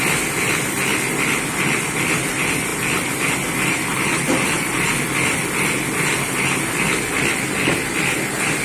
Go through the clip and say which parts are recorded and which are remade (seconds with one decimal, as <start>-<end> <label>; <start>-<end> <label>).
0.0-3.9 recorded; 3.9-4.9 remade; 4.9-8.6 recorded